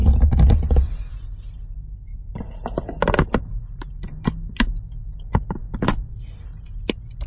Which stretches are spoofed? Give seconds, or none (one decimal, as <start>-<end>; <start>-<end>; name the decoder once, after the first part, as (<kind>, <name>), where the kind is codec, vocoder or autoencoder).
0.0-1.1 (vocoder, BigVGAN v2)